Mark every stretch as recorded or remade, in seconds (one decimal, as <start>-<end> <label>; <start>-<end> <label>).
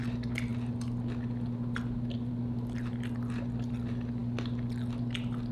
0.0-5.5 recorded